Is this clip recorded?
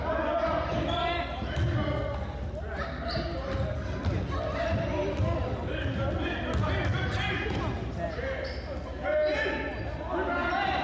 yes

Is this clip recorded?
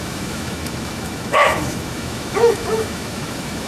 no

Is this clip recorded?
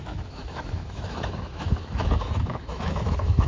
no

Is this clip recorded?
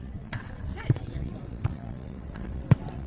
no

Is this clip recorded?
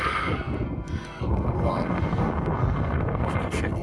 no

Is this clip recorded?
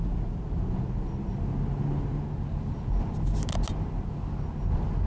yes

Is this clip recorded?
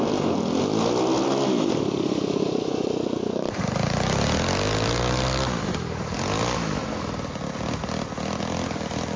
yes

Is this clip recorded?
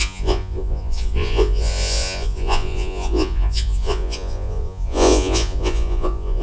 no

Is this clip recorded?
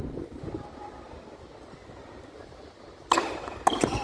yes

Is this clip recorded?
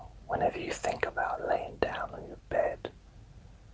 yes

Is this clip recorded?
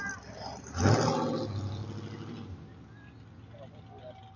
yes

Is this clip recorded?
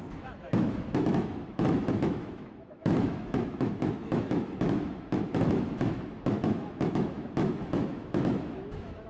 no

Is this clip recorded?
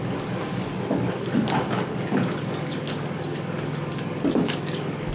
no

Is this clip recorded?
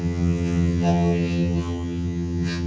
no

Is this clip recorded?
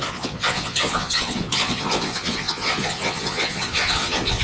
no